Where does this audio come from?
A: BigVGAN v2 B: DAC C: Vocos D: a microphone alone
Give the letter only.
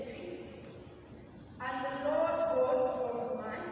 D